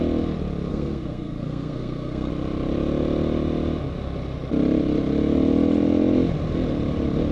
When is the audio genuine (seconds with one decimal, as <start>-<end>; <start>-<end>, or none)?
0.0-0.7; 2.3-7.3